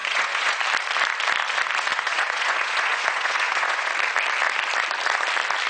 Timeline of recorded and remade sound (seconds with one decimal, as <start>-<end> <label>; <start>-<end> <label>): 0.0-0.6 remade; 0.6-1.9 recorded; 1.9-3.9 remade; 3.9-5.7 recorded

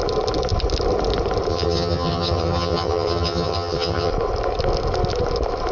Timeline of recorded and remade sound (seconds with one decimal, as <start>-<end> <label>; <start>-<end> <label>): 0.0-1.5 recorded; 1.5-4.1 remade; 4.1-5.7 recorded